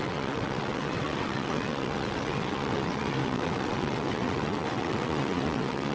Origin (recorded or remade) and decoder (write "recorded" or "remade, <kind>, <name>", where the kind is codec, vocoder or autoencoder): remade, vocoder, WaveNeXt